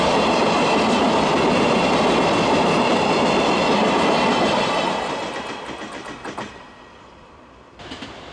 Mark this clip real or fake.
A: real